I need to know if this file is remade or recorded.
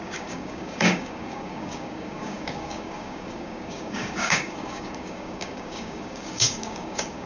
remade